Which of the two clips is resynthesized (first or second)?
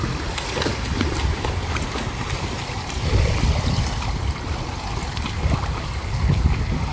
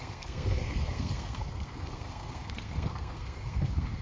second